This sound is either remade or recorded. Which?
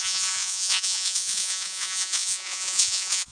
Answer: remade